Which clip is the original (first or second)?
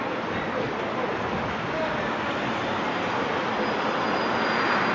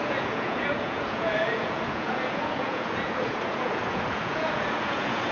first